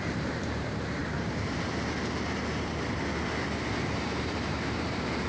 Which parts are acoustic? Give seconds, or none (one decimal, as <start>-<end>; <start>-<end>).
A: 1.0-4.2